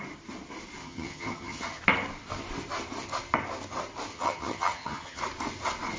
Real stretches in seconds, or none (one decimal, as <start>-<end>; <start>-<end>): 0.0-0.8; 1.8-4.1; 5.2-6.0